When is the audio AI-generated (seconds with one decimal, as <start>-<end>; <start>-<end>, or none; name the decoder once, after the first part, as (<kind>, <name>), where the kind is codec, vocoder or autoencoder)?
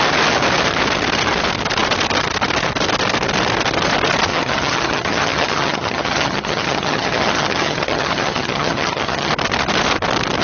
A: 4.3-9.3 (vocoder, HiFi-GAN)